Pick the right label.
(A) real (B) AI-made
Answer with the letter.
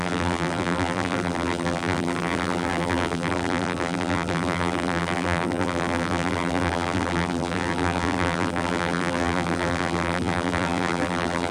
B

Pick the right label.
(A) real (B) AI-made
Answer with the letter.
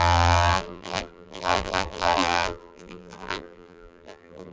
B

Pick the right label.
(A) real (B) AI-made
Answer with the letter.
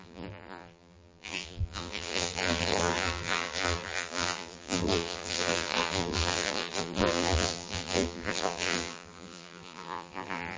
B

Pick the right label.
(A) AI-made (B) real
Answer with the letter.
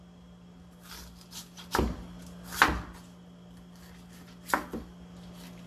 B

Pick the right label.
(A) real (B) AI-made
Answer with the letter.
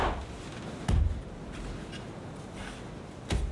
A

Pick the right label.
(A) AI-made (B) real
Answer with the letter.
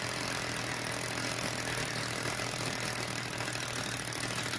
B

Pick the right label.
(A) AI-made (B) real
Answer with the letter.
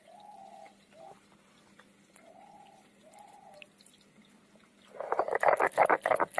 B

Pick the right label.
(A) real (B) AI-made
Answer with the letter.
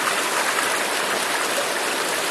A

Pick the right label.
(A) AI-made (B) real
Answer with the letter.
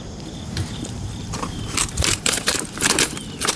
A